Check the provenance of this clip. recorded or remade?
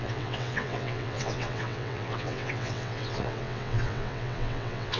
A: remade